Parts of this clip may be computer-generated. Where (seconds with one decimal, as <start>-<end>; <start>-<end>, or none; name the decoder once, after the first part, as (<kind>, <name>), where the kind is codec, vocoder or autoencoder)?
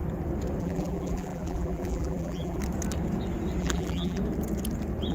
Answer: 0.6-2.6 (vocoder, BigVGAN v2); 3.6-4.2